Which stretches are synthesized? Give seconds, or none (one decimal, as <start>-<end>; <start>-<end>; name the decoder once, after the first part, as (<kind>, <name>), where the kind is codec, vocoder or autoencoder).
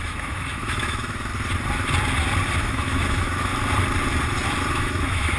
0.0-1.3 (autoencoder, DAC-VAE); 2.6-3.5; 4.7-5.4